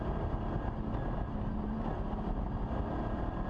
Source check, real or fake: real